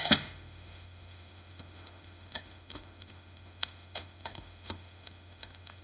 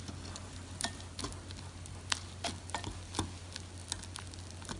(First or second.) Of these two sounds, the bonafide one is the second